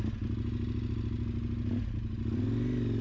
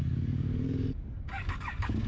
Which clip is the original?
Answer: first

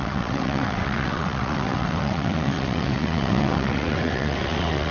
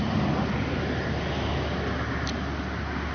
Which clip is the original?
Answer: second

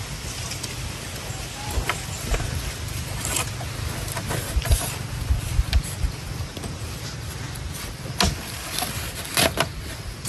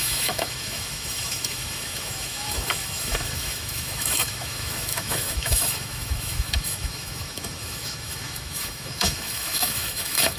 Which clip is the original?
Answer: first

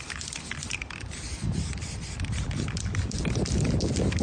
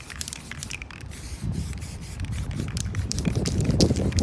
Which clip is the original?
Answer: first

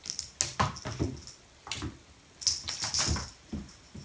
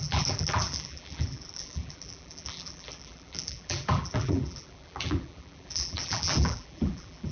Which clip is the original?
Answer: first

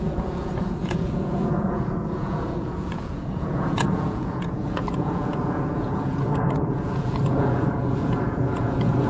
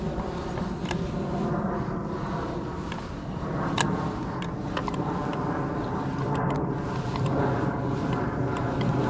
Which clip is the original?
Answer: second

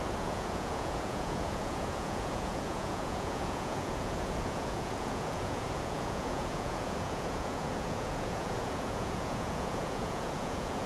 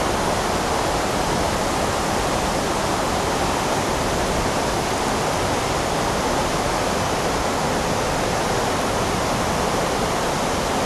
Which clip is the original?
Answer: second